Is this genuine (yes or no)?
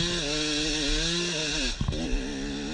yes